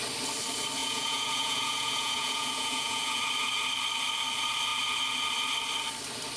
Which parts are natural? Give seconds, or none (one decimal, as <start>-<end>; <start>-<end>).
0.0-0.8; 3.2-6.4